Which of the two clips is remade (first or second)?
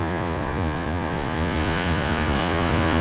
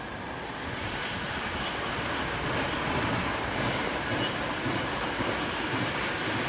first